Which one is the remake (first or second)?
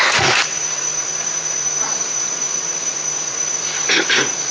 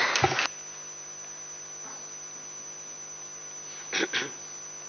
first